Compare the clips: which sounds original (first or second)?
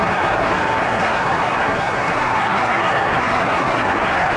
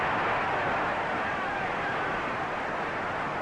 second